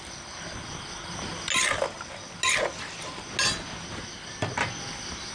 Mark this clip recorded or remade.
recorded